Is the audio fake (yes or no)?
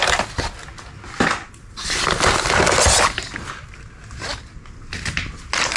no